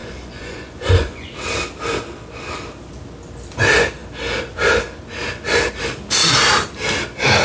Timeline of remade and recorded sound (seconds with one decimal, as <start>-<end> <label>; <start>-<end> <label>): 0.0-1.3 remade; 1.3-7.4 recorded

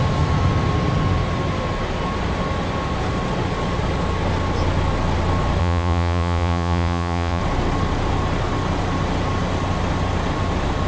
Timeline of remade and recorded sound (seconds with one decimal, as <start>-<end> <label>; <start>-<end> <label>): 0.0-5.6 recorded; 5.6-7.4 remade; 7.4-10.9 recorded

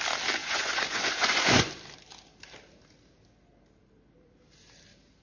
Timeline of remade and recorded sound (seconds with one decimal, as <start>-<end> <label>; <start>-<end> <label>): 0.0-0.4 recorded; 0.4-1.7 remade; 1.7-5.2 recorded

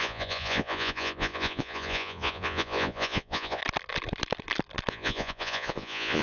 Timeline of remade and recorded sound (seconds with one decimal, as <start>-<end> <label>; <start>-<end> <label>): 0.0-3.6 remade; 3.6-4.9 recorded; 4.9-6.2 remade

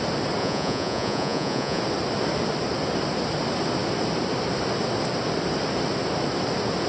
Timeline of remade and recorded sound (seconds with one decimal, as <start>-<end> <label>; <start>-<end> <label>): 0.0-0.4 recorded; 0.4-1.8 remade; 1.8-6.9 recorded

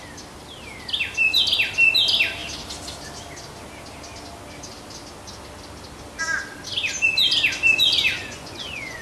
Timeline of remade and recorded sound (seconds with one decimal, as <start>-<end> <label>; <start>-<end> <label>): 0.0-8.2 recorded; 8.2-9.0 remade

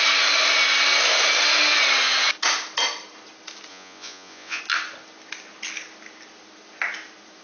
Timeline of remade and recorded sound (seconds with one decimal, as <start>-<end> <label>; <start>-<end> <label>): 0.0-3.7 recorded; 3.7-4.6 remade; 4.6-7.4 recorded

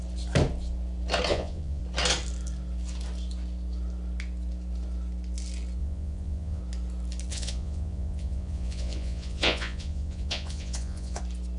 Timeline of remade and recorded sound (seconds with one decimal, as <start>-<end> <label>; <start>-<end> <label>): 0.0-1.3 recorded; 1.3-1.8 remade; 1.8-5.8 recorded; 5.8-6.6 remade; 6.6-7.3 recorded; 7.3-11.2 remade; 11.2-11.6 recorded